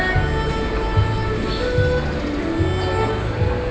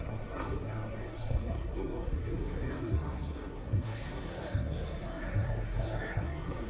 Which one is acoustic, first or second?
first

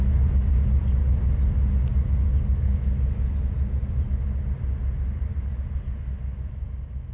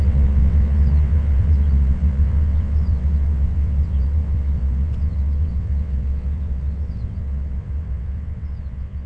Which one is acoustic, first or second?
first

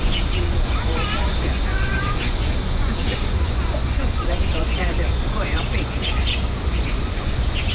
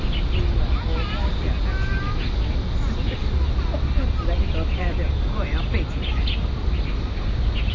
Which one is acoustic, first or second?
second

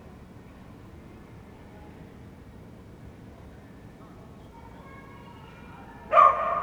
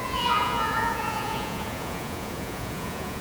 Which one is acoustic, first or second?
first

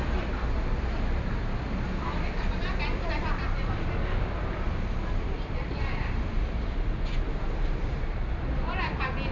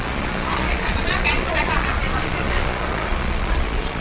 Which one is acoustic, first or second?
first